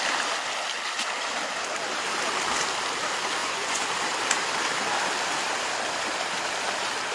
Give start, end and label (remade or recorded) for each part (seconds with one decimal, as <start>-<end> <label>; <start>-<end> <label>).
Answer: 0.0-3.4 recorded; 3.4-3.9 remade; 3.9-7.1 recorded